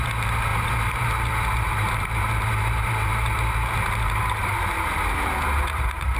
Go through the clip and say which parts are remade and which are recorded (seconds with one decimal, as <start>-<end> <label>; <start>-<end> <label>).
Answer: 0.0-6.2 remade